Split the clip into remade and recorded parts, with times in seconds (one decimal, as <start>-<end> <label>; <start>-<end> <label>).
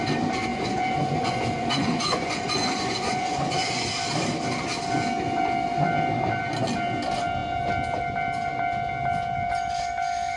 0.0-0.5 recorded; 0.5-3.9 remade; 3.9-10.4 recorded